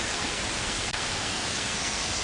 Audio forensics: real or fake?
fake